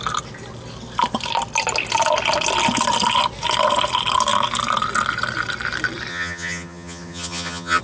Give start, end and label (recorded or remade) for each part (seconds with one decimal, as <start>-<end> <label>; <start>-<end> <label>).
0.0-6.1 recorded; 6.1-7.8 remade